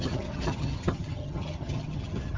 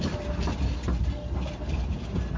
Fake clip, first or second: first